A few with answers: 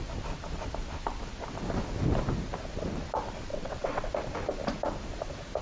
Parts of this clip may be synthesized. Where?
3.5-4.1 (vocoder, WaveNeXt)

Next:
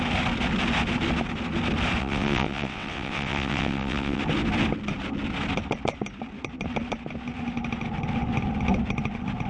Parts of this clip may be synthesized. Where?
2.0-4.2 (vocoder, WaveNeXt)

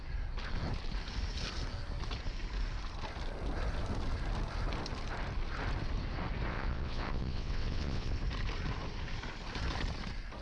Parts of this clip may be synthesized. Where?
6.5-8.2 (vocoder, WaveNeXt)

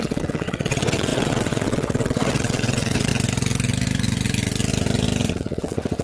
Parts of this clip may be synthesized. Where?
0.0-3.1 (vocoder, WaveNeXt); 5.3-6.0

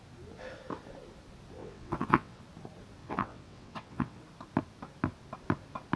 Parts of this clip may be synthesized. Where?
1.6-2.4 (vocoder, WaveNeXt); 3.0-4.2

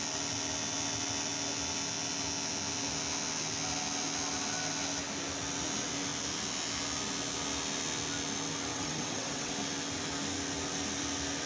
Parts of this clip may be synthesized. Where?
8.7-9.5 (vocoder, WaveNeXt)